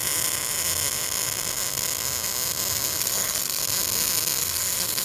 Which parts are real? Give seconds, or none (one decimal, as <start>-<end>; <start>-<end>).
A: 0.0-3.0; 3.6-4.4